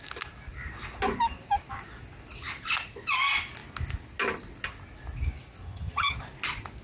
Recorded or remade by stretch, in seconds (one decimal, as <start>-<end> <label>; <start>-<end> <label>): 0.0-5.6 recorded; 5.6-6.2 remade; 6.2-6.8 recorded